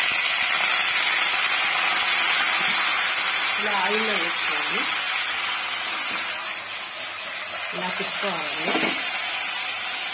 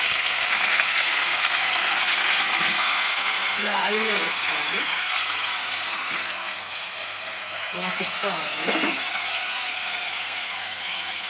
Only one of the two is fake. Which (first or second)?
second